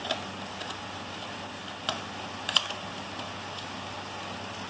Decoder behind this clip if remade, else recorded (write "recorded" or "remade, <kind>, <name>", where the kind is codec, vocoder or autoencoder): recorded